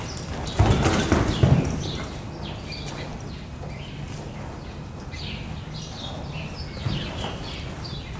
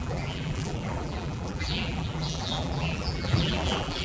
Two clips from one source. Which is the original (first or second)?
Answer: first